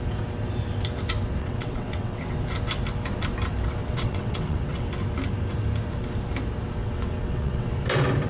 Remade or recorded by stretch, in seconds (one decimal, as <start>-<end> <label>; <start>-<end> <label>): 0.0-1.4 recorded; 1.4-2.3 remade; 2.3-3.8 recorded; 3.8-4.9 remade; 4.9-6.8 recorded; 6.8-7.7 remade; 7.7-8.3 recorded